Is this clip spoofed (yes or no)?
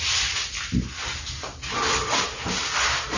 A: no